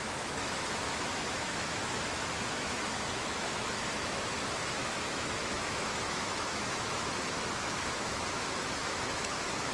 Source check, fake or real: fake